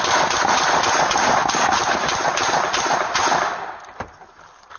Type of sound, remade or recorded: recorded